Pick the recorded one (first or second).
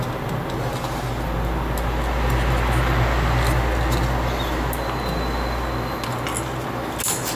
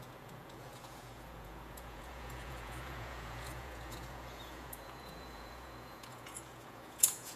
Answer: first